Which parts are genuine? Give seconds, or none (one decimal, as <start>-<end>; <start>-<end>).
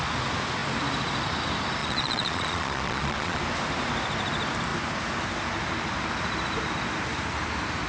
0.0-1.8; 3.4-7.9